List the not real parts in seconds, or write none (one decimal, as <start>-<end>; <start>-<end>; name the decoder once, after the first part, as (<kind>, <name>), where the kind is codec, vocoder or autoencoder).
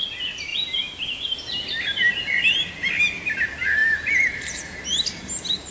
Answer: 0.5-2.7 (vocoder, BigVGAN v2); 3.8-4.8